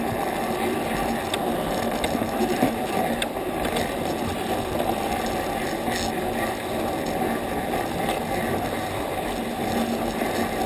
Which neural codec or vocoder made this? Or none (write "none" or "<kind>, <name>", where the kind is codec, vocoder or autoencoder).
none